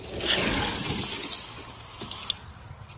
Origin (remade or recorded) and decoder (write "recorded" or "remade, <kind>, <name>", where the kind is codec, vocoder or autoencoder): recorded